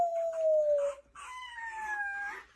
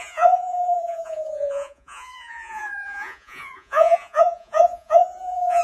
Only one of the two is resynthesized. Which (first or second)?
second